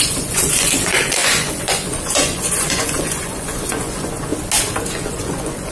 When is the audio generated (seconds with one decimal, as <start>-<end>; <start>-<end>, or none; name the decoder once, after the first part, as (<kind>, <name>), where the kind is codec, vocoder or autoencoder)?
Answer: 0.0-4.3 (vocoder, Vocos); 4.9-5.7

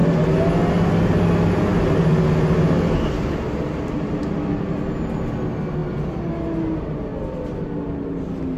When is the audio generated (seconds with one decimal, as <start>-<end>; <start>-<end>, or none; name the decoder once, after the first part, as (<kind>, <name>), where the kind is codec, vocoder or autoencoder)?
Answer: none

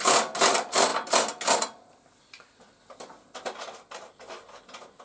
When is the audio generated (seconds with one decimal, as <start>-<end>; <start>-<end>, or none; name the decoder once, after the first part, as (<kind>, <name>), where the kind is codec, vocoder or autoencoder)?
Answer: none